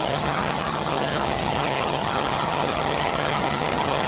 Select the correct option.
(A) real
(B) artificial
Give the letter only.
B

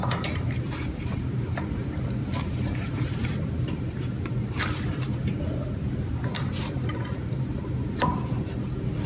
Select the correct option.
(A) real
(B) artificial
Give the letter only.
B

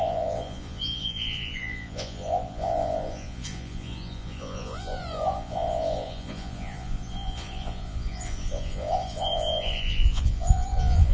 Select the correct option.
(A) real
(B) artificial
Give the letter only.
B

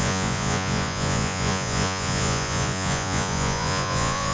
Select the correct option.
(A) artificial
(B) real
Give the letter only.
A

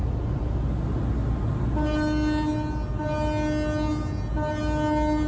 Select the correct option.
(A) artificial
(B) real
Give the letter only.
B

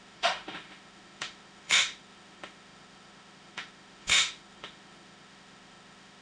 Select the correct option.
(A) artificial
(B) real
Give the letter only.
A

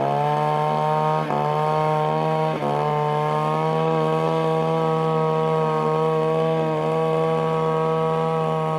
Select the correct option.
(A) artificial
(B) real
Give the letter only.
B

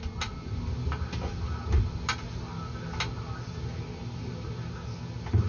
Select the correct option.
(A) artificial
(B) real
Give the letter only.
B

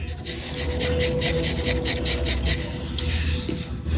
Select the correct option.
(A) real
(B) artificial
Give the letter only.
A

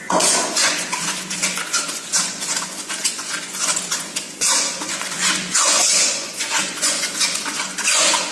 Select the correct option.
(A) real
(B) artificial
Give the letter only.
B